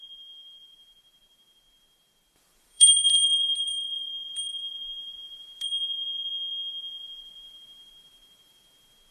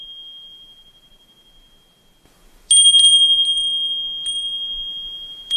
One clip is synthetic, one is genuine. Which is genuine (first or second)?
second